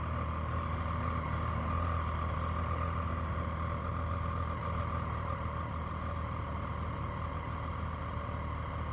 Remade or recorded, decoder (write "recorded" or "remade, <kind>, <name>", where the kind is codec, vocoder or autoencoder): recorded